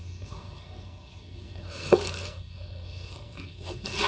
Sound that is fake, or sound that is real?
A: fake